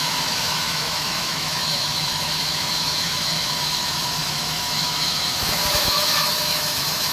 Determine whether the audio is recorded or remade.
remade